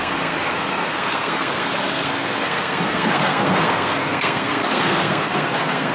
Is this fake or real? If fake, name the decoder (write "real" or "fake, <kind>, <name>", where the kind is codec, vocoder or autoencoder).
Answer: fake, codec, SNAC